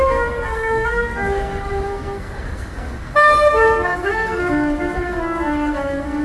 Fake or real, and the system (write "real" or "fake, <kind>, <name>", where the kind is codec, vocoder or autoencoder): fake, codec, SNAC